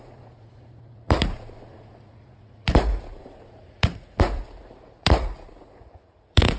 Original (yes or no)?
no